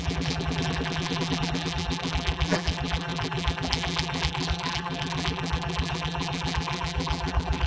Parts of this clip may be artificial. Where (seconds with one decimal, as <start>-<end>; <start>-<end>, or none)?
0.0-7.7